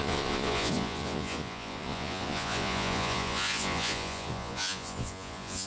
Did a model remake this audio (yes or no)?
yes